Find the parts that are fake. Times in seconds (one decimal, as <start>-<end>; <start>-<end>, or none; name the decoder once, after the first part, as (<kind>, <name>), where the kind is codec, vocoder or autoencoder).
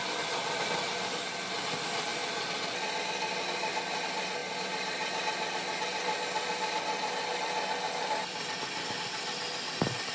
none